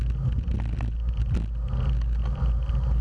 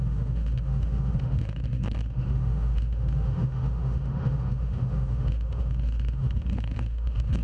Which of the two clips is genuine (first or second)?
first